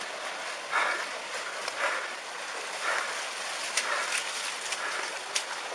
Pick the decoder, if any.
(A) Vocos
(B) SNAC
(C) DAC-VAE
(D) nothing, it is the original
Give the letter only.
D